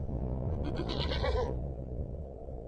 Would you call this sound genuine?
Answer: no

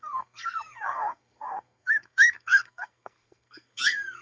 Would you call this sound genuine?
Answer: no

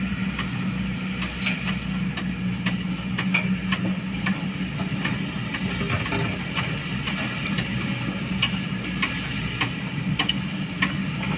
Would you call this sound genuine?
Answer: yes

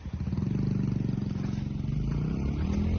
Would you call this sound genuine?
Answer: yes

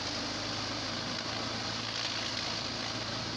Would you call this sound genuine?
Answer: yes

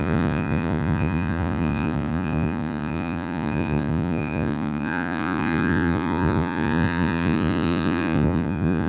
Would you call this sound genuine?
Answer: no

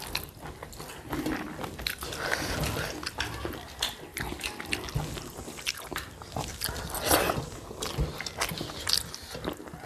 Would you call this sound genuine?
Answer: yes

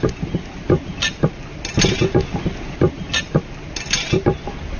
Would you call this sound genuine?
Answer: yes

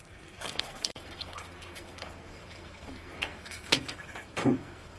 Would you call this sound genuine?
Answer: no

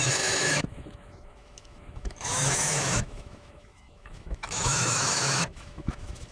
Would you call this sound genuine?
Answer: no